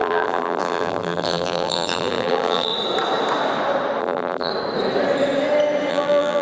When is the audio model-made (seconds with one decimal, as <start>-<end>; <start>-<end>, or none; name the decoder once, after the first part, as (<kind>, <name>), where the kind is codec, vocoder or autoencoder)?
0.0-2.7 (vocoder, BigVGAN v2); 4.0-4.5; 5.9-6.4